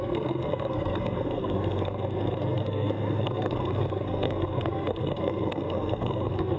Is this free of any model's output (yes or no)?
no